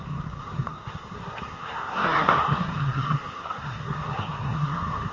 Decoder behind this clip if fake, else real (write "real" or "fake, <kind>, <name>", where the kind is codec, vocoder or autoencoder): fake, codec, SNAC